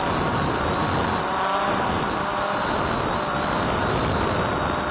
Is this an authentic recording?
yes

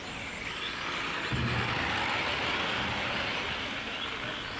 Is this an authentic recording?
yes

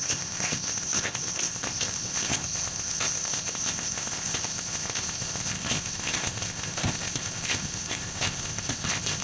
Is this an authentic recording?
no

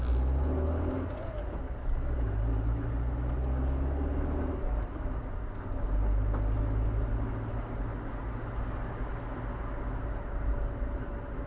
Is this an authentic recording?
yes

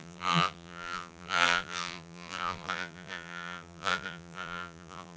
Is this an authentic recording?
no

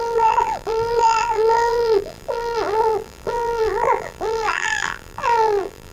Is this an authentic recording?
no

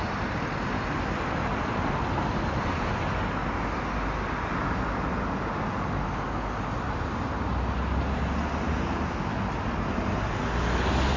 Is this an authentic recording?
yes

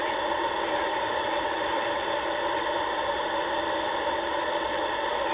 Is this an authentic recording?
no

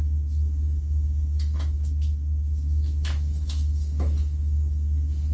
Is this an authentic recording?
no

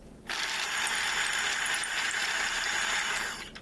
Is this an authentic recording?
yes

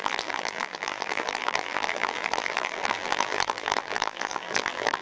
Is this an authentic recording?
no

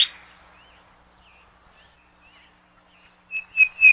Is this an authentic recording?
yes